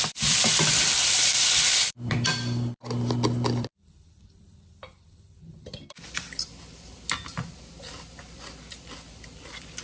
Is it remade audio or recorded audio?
remade